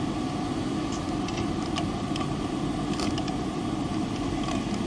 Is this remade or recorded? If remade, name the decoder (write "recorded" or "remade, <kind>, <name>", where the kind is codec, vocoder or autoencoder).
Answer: recorded